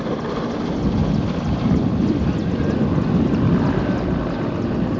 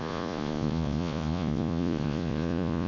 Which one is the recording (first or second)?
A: first